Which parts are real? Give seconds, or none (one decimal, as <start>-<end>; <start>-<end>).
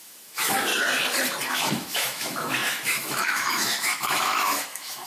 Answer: 0.7-1.5